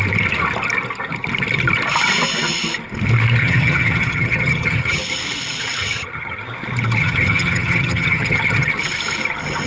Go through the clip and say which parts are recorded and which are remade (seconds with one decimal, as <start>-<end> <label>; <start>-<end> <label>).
0.0-3.4 recorded; 3.4-5.0 remade; 5.0-5.8 recorded; 5.8-6.4 remade; 6.4-7.0 recorded; 7.0-8.7 remade; 8.7-9.7 recorded